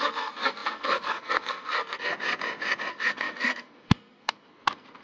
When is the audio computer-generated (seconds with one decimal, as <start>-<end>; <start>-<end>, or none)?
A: 0.0-2.1; 2.9-5.0